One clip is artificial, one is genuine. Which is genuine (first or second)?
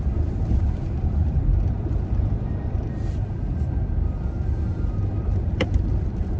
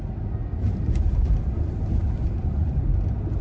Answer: second